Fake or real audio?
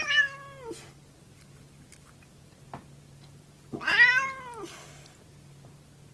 real